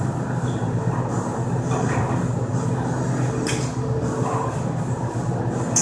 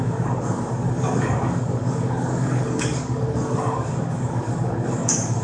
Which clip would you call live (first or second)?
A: first